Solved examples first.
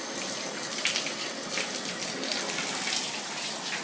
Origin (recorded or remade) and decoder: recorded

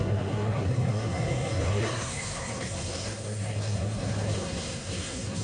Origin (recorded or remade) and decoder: remade, codec, SNAC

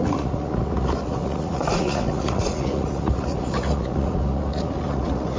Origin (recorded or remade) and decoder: remade, vocoder, Vocos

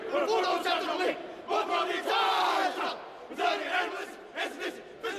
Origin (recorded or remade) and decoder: recorded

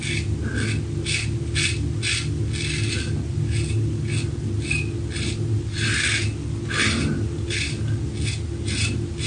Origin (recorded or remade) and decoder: recorded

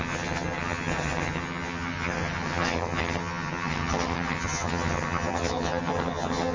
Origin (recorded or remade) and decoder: remade, vocoder, HiFi-GAN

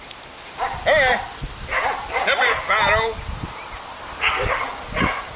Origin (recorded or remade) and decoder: recorded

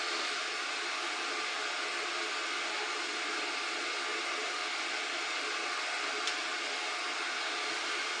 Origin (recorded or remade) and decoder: recorded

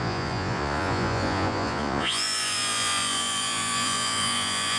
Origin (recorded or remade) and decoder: remade, vocoder, Vocos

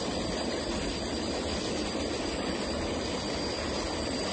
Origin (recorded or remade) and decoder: recorded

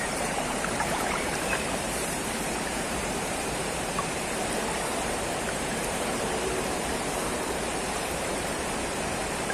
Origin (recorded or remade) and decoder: remade, vocoder, BigVGAN v2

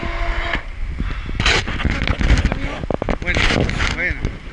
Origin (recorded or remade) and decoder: recorded